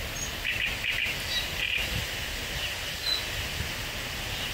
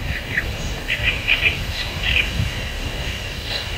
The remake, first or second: second